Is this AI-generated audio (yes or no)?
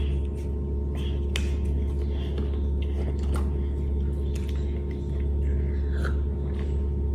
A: no